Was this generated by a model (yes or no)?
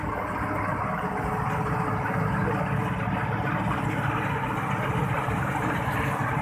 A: no